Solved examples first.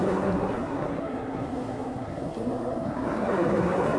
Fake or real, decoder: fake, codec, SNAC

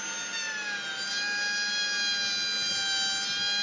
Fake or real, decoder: real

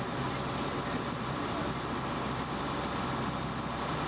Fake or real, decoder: real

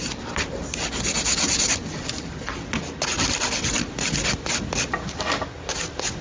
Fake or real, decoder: real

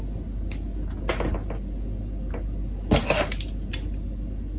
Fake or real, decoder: real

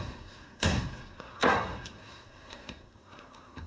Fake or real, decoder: fake, codec, SNAC